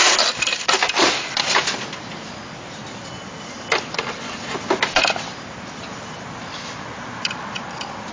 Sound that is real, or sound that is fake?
real